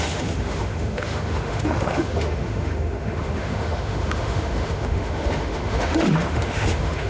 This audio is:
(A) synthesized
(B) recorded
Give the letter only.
A